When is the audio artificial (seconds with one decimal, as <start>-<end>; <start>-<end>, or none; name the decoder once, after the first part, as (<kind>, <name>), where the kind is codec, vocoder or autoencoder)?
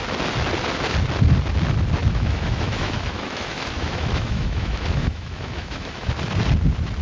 2.0-6.1 (autoencoder, DAC-VAE)